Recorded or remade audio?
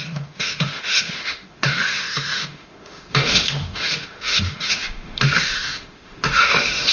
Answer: remade